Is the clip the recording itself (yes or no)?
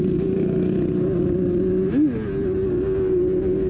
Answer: yes